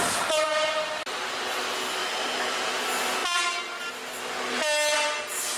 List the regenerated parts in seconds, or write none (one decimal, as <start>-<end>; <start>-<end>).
none